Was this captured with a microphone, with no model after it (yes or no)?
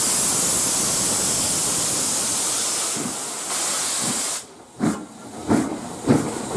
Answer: yes